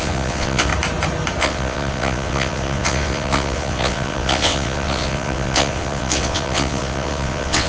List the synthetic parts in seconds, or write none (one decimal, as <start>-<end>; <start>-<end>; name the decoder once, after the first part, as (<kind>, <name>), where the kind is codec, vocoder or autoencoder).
0.0-0.7 (vocoder, WaveNeXt); 1.4-7.7